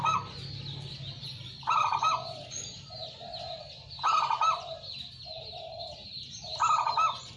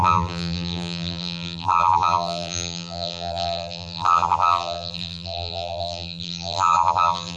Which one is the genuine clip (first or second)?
first